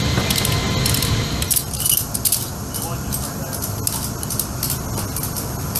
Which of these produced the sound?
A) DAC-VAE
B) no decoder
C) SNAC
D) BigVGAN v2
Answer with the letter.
B